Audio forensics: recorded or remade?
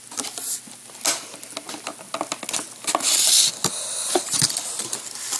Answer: recorded